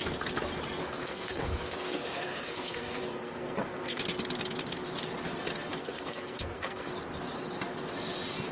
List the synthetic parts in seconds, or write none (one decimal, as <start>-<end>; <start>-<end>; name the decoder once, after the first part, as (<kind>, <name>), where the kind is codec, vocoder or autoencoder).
0.8-4.0 (codec, SNAC); 5.8-6.9